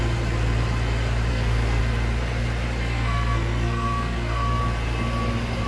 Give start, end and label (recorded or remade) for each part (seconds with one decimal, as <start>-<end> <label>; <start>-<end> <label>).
0.0-1.3 recorded; 1.3-1.8 remade; 1.8-2.8 recorded; 2.8-4.6 remade; 4.6-5.7 recorded